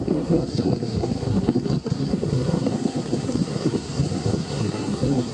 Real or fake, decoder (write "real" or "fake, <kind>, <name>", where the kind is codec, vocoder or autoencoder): fake, codec, SNAC